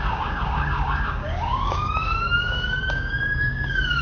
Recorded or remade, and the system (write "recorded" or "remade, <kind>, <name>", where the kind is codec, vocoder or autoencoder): remade, codec, DAC